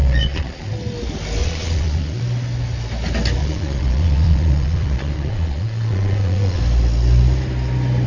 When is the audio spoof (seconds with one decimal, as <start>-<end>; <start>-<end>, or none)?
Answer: 0.0-0.7; 1.4-2.2; 3.4-6.6